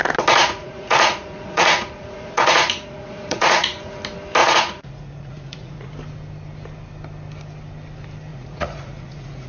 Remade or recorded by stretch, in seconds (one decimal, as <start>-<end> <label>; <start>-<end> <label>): 0.0-0.4 recorded; 0.4-4.0 remade; 4.0-4.4 recorded; 4.4-5.9 remade; 5.9-8.3 recorded; 8.3-9.5 remade